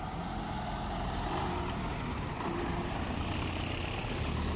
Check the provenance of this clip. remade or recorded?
recorded